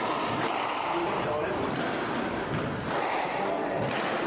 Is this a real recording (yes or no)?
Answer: yes